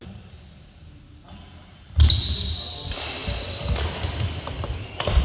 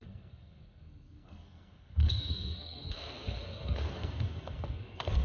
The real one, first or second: first